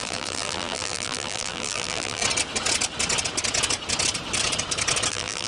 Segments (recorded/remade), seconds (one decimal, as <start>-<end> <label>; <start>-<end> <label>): 0.0-2.2 remade; 2.2-5.1 recorded; 5.1-5.5 remade